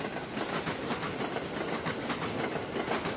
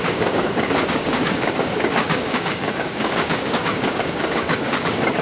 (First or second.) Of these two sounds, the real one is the first